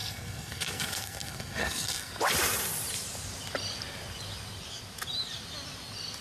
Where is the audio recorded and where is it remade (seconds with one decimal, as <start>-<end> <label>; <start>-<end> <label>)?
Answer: 0.0-2.1 remade; 2.1-6.2 recorded